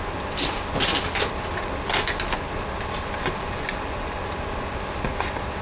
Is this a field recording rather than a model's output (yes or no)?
yes